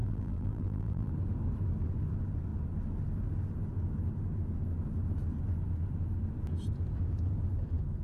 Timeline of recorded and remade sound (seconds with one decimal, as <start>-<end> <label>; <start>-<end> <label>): 0.0-1.1 remade; 1.1-8.0 recorded